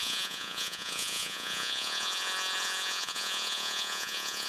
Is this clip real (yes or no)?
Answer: no